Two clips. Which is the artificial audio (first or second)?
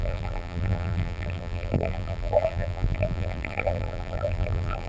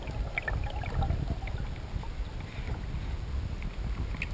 first